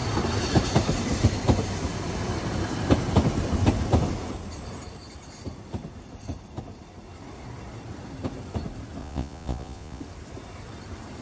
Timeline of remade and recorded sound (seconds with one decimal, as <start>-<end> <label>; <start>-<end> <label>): 0.0-9.0 recorded; 9.0-10.0 remade; 10.0-11.2 recorded